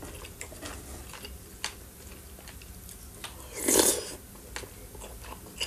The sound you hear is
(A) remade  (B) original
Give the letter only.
B